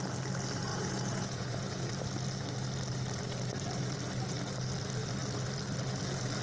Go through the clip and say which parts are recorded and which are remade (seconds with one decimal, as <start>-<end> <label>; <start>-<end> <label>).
0.0-0.7 recorded; 0.7-1.9 remade; 1.9-6.4 recorded